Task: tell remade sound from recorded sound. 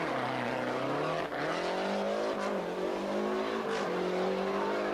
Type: recorded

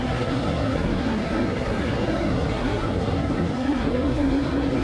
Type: remade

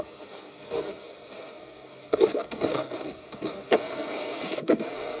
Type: remade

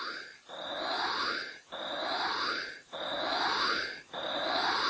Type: recorded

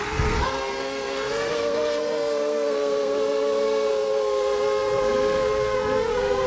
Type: remade